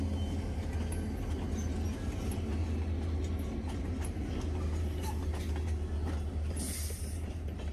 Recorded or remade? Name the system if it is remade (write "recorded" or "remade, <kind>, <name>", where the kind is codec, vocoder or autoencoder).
recorded